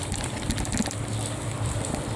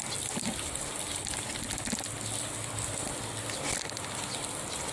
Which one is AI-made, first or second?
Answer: first